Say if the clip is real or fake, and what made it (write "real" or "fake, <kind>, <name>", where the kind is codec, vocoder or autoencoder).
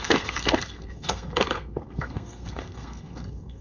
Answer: fake, codec, SNAC